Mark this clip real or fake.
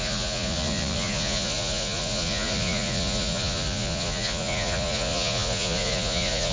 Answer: fake